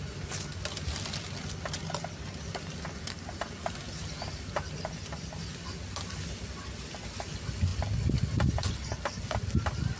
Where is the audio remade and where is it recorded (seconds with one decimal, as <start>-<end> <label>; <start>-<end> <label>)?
0.0-10.0 recorded